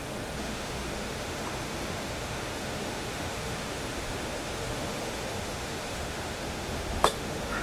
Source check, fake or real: fake